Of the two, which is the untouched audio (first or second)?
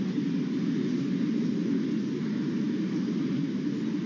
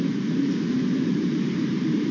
first